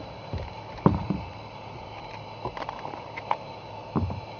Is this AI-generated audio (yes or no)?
no